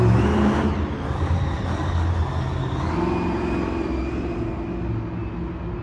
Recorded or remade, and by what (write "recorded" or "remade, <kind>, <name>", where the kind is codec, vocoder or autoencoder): recorded